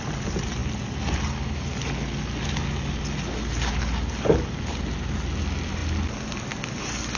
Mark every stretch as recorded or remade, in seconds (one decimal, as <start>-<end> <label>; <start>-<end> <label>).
0.0-7.2 recorded

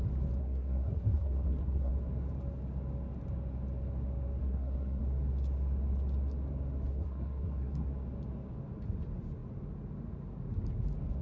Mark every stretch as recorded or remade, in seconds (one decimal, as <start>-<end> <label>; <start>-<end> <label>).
0.0-0.4 recorded; 0.4-1.9 remade; 1.9-4.4 recorded; 4.4-5.0 remade; 5.0-6.9 recorded; 6.9-7.9 remade; 7.9-11.2 recorded

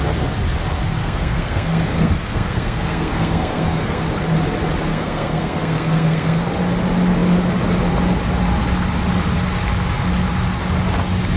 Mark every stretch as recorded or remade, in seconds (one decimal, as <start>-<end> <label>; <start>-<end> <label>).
0.0-1.0 recorded; 1.0-4.0 remade; 4.0-4.9 recorded; 4.9-6.4 remade; 6.4-11.4 recorded

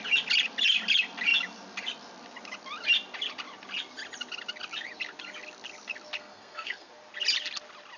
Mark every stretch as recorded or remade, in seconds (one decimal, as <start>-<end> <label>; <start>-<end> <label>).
0.0-6.2 recorded; 6.2-6.9 remade; 6.9-8.0 recorded

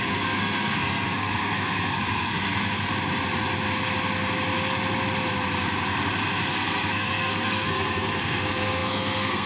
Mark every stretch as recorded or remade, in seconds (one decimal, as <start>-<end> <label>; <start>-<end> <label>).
0.0-2.9 remade; 2.9-6.5 recorded; 6.5-9.5 remade